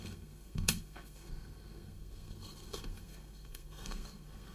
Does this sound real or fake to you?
fake